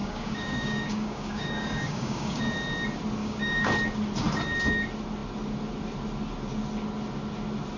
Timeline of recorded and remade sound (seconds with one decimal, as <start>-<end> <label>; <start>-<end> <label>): 0.0-2.4 remade; 2.4-3.2 recorded; 3.2-3.7 remade; 3.7-7.8 recorded